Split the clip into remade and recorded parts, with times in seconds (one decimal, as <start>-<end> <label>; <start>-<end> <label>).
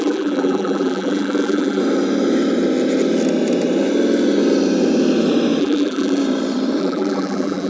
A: 0.0-1.8 remade; 1.8-5.6 recorded; 5.6-6.2 remade; 6.2-6.8 recorded; 6.8-7.7 remade